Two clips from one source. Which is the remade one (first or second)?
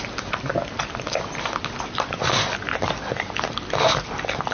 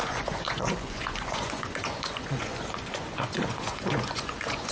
second